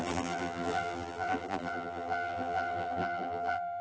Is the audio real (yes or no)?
no